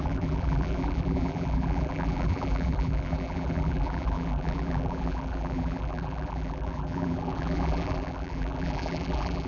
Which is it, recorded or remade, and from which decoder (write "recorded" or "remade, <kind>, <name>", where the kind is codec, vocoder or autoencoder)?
remade, vocoder, BigVGAN v2